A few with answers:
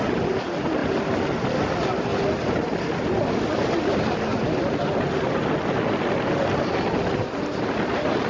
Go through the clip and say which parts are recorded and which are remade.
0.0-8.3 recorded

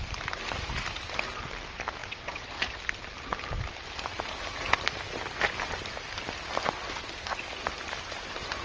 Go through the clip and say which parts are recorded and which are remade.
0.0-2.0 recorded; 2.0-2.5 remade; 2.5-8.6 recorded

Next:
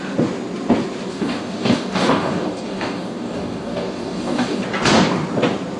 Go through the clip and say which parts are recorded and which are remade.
0.0-1.1 recorded; 1.1-4.6 remade; 4.6-5.8 recorded

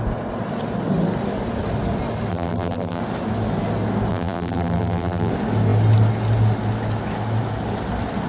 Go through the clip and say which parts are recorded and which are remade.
0.0-2.3 recorded; 2.3-3.0 remade; 3.0-4.1 recorded; 4.1-5.3 remade; 5.3-8.3 recorded

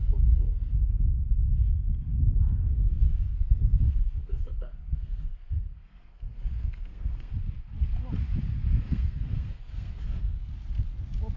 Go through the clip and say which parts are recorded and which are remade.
0.0-7.3 remade; 7.3-8.7 recorded; 8.7-10.5 remade; 10.5-11.4 recorded

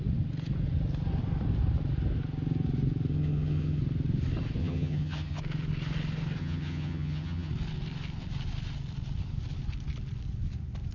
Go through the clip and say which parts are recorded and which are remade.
0.0-3.1 recorded; 3.1-3.8 remade; 3.8-4.6 recorded; 4.6-5.4 remade; 5.4-6.4 recorded; 6.4-7.5 remade; 7.5-10.9 recorded

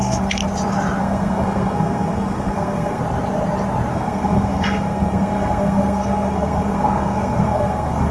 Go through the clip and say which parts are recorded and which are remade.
0.0-0.4 remade; 0.4-1.0 recorded; 1.0-3.0 remade; 3.0-3.9 recorded; 3.9-8.1 remade

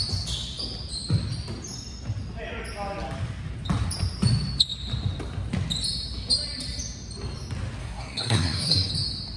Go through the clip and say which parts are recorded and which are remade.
0.0-7.8 recorded; 7.8-8.9 remade; 8.9-9.4 recorded